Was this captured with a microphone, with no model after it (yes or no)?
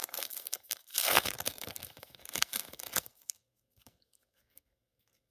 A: no